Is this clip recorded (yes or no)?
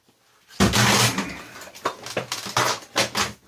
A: yes